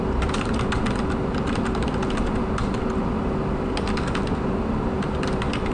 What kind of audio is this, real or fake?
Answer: real